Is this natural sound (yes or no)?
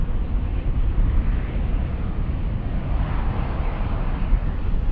yes